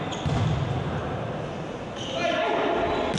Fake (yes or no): no